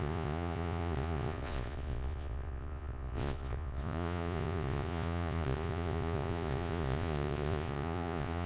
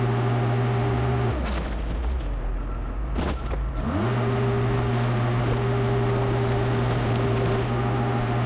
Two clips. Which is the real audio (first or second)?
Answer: second